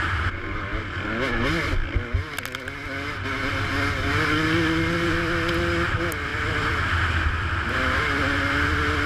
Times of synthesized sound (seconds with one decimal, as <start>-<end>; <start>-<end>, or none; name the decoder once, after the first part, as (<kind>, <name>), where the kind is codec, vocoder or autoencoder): 6.3-8.0 (vocoder, BigVGAN v2)

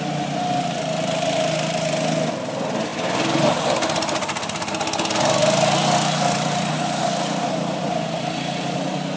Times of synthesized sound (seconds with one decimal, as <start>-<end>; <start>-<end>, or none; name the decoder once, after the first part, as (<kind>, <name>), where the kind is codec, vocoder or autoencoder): none